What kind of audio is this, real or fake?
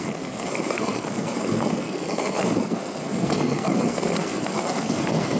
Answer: fake